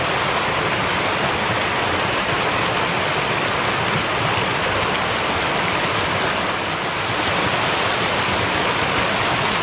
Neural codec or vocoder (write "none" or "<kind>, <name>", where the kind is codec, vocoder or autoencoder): none